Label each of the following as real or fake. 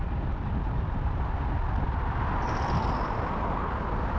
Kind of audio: real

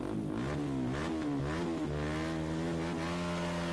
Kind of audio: real